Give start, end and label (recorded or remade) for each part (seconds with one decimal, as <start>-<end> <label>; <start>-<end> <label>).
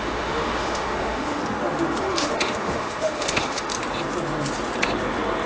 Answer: 0.0-1.4 remade; 1.4-2.0 recorded; 2.0-3.7 remade; 3.7-5.5 recorded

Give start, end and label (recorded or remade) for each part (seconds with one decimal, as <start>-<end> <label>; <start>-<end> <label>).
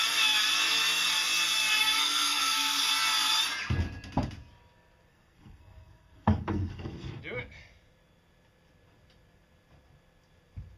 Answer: 0.0-1.8 recorded; 1.8-2.9 remade; 2.9-5.1 recorded; 5.1-7.2 remade; 7.2-10.8 recorded